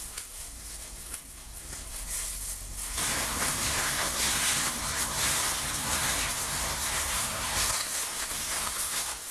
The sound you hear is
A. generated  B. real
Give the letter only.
A